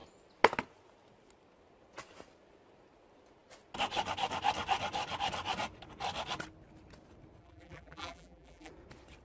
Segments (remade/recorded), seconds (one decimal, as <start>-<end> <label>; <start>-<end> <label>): 0.0-7.4 recorded; 7.4-8.7 remade; 8.7-9.2 recorded